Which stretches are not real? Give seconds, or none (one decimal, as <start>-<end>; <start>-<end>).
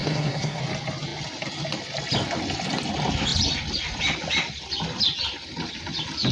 0.0-0.6